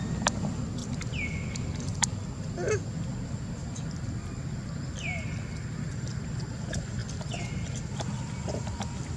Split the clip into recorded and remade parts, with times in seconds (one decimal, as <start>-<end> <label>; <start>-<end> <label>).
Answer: 0.0-9.2 recorded